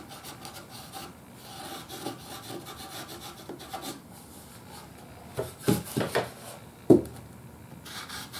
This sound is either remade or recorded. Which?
recorded